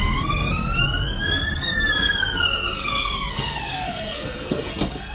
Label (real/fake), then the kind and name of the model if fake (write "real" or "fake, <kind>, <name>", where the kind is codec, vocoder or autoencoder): fake, codec, SNAC